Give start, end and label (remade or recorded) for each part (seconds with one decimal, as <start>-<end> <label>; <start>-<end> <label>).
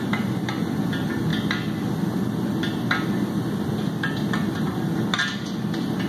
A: 0.0-6.1 recorded